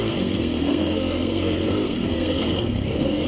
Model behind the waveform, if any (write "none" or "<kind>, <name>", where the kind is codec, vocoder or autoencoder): codec, SNAC